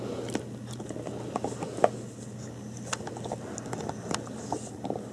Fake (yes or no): no